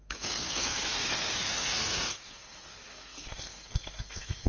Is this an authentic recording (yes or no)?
no